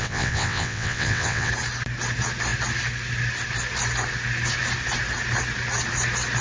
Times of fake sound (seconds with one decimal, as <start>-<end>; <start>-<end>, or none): 0.0-1.5